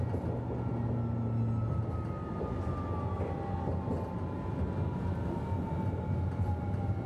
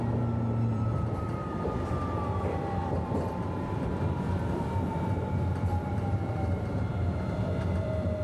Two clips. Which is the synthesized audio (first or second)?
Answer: second